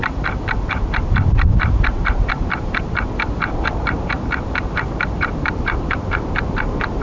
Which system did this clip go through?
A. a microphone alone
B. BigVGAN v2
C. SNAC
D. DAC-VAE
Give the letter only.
B